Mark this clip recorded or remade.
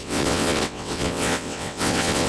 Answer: remade